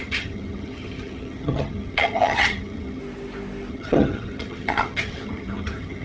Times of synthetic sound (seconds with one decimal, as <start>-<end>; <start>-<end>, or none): 0.0-3.0; 3.7-6.0